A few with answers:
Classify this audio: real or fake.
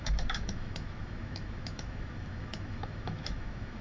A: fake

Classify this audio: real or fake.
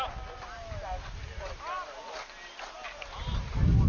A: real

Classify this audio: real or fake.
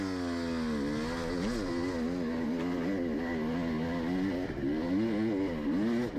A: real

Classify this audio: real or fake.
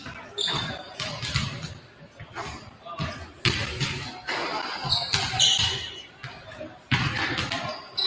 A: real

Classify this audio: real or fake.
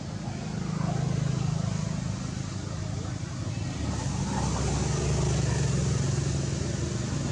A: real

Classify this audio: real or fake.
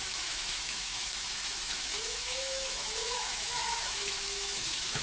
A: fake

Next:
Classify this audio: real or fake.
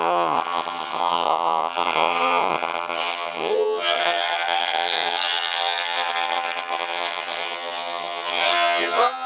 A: fake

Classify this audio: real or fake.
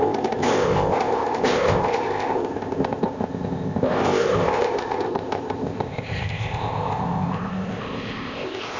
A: fake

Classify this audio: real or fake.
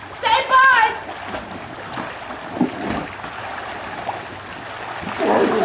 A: real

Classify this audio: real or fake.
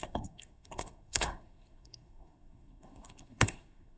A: fake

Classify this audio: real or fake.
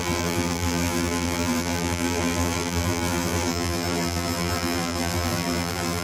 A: fake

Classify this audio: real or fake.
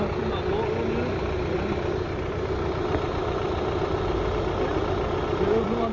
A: real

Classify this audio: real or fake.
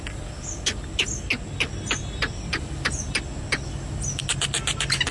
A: real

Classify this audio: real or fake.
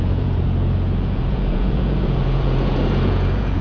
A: fake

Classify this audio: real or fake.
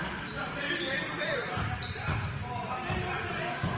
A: fake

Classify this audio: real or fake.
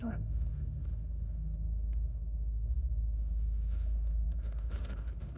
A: fake